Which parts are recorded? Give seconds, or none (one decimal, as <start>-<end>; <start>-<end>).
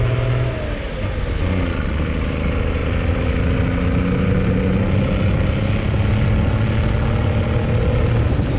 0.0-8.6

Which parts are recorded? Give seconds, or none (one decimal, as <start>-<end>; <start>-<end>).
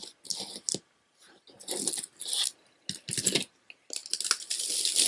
0.0-5.1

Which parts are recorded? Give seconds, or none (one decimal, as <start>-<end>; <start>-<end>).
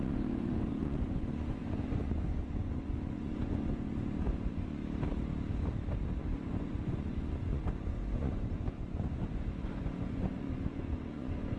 4.8-6.2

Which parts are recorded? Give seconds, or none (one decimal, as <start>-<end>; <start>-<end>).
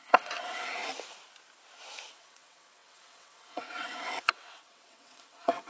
0.8-2.1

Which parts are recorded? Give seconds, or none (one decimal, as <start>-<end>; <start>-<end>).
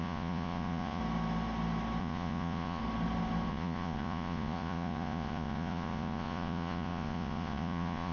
1.0-2.0; 2.8-3.5